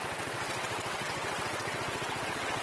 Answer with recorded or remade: remade